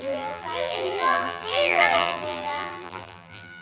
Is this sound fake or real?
fake